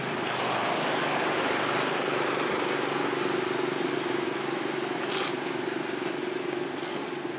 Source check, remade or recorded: recorded